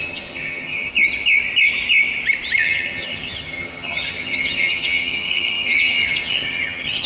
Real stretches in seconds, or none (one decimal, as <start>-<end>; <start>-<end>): 0.9-2.6